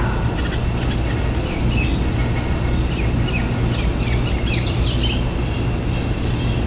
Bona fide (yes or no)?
yes